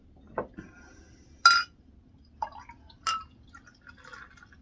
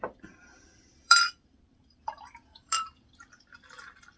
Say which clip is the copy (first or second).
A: second